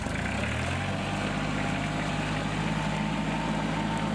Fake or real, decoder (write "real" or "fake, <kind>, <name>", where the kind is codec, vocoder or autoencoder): real